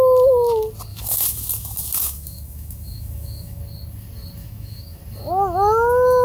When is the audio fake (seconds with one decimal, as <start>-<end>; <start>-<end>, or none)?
0.9-3.6; 4.4-5.0

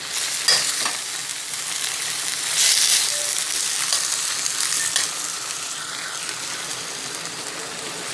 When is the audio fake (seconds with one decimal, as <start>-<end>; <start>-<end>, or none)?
6.7-7.4

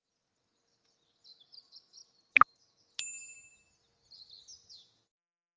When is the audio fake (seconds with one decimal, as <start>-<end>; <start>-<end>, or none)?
none

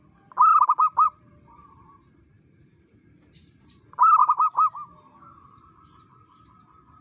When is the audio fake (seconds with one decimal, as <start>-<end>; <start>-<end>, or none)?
0.5-3.8